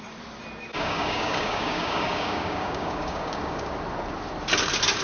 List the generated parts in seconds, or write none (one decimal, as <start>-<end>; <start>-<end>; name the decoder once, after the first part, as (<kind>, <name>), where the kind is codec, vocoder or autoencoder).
0.7-3.7 (codec, DAC)